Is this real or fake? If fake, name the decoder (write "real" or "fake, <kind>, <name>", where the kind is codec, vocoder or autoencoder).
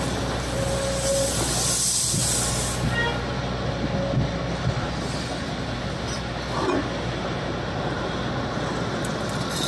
real